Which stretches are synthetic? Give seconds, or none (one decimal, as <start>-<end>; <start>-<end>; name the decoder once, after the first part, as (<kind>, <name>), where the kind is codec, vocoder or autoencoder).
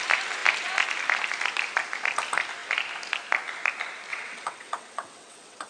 4.1-5.7 (vocoder, WaveNeXt)